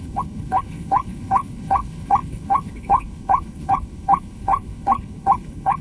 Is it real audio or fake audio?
fake